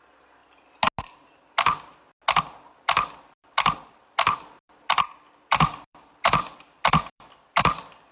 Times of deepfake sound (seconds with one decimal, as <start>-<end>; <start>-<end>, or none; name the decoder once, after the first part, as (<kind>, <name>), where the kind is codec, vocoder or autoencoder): 0.0-0.4 (vocoder, BigVGAN v2); 2.4-8.1